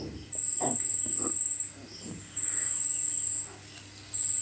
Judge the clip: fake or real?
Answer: real